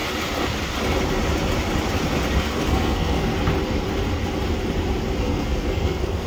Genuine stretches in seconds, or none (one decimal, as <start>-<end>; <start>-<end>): 0.0-2.6; 3.3-5.2